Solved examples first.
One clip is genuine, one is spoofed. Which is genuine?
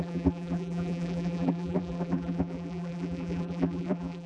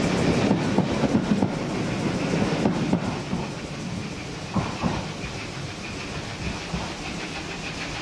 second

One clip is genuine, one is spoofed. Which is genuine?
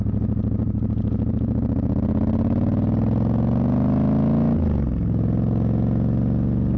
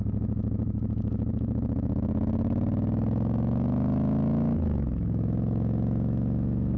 first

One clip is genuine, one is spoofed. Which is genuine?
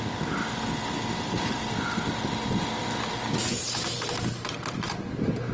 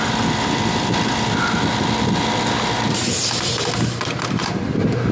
first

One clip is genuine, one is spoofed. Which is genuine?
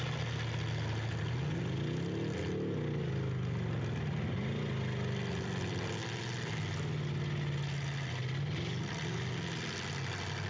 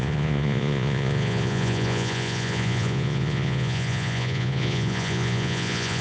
first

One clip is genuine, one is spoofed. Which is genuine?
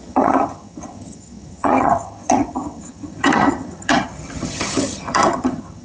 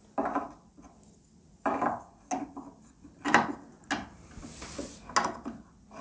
second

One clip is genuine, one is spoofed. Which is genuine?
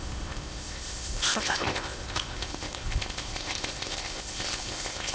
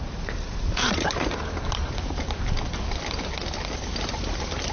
second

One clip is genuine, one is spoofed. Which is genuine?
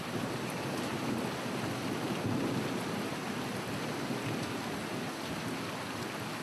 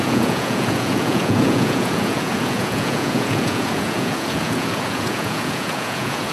first